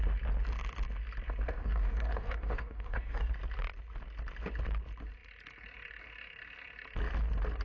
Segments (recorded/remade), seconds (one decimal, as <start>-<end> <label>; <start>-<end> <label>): 0.0-1.6 recorded; 1.6-3.3 remade; 3.3-7.6 recorded